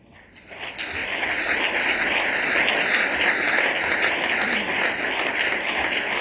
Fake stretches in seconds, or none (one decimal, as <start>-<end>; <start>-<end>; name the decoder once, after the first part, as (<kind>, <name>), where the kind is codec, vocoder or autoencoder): none